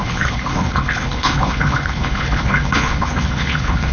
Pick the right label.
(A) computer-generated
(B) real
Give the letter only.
A